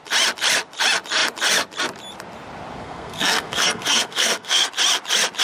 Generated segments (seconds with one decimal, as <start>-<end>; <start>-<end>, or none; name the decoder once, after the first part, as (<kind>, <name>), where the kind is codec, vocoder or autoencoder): 2.8-4.7 (codec, SNAC)